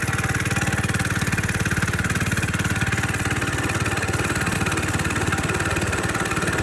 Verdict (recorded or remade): recorded